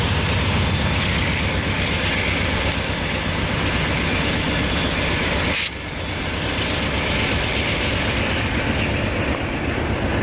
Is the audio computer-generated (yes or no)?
no